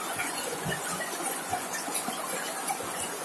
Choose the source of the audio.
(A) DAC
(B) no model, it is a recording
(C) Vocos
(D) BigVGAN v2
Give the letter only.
C